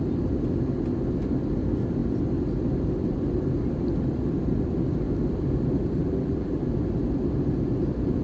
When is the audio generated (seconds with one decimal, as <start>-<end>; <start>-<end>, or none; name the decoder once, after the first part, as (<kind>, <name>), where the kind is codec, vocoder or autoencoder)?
6.0-6.6 (vocoder, BigVGAN v2)